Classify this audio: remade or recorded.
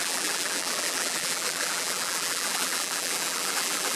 remade